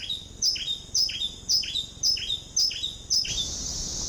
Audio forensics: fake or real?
real